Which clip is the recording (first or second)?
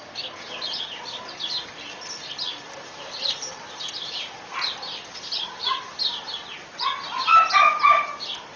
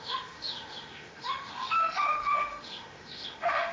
first